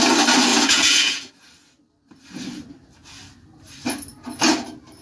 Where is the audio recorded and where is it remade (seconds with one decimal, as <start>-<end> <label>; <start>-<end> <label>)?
0.0-0.5 recorded; 0.5-1.3 remade; 1.3-5.0 recorded